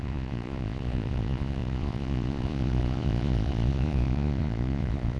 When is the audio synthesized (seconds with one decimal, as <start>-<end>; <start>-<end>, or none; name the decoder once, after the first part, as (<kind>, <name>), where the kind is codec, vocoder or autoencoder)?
0.0-5.2 (vocoder, Vocos)